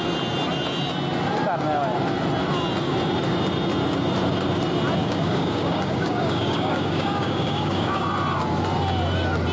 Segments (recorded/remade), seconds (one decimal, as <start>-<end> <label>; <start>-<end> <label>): 0.0-5.0 recorded; 5.0-8.0 remade; 8.0-9.5 recorded